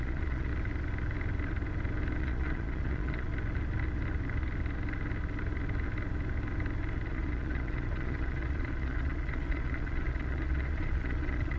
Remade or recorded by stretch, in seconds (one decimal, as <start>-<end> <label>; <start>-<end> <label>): 0.0-0.5 remade; 0.5-2.2 recorded; 2.2-3.3 remade; 3.3-7.1 recorded; 7.1-11.6 remade